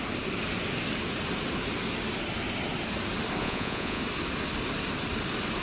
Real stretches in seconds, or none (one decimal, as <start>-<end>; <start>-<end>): 0.0-3.4; 4.0-5.6

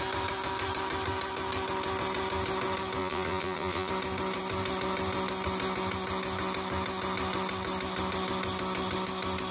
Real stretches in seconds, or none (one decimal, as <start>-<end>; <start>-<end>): 0.0-3.0; 3.9-9.5

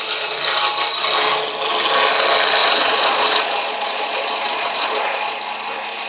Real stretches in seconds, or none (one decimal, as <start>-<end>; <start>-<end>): 0.0-2.6; 5.4-6.1

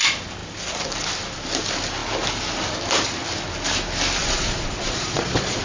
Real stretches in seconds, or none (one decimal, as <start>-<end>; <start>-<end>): 0.0-4.2

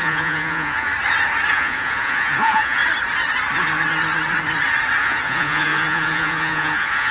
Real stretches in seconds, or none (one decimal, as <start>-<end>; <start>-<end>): 0.9-1.5; 2.8-5.0

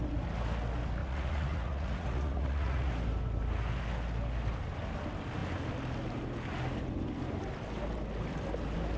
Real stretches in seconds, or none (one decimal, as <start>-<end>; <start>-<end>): 0.0-1.0; 2.9-9.0

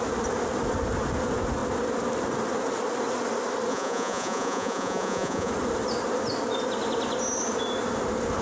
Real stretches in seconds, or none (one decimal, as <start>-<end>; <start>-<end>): 0.0-3.7; 5.5-8.4

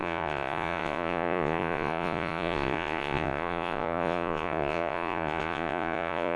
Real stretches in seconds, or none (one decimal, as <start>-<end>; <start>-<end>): none